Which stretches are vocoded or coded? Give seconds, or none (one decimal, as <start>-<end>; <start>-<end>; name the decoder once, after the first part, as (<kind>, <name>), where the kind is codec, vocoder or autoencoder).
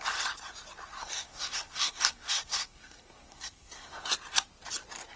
1.0-4.1 (codec, SNAC)